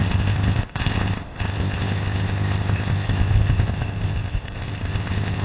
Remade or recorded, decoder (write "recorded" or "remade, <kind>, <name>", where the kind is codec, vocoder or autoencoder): remade, codec, ZipCodec